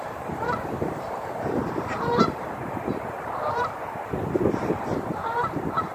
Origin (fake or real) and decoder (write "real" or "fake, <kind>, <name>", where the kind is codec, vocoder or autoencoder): fake, vocoder, BigVGAN v2